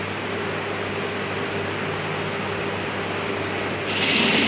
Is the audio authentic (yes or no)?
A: yes